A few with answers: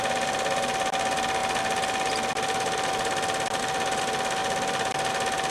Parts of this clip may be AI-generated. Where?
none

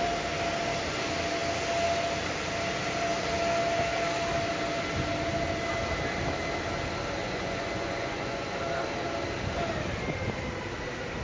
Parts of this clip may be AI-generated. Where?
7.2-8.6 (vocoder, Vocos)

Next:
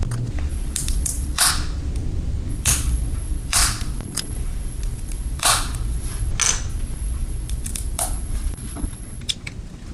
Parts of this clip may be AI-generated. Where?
0.5-1.5 (vocoder, Vocos); 2.5-6.3; 6.7-9.2

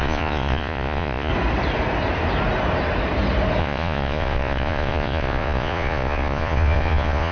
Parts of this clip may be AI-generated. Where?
0.0-1.3 (vocoder, Vocos); 3.6-7.3

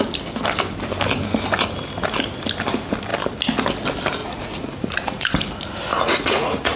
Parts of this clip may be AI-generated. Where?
4.2-5.3 (vocoder, Vocos); 5.9-6.8

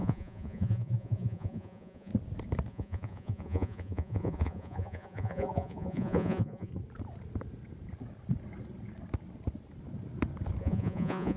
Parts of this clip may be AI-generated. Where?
0.0-2.1 (vocoder, Vocos); 2.7-6.7; 10.6-11.4